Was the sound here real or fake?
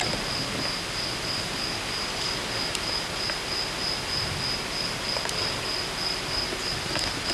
real